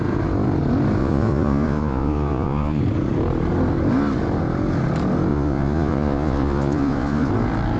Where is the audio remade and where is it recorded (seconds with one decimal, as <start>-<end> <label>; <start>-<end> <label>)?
0.0-1.0 recorded; 1.0-2.8 remade; 2.8-5.3 recorded; 5.3-7.3 remade; 7.3-7.8 recorded